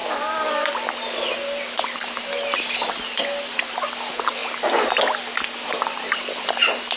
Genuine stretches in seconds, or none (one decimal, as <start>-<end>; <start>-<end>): 0.0-7.0